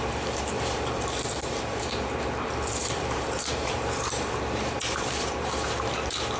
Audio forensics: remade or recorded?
remade